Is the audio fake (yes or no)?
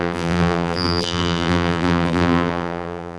yes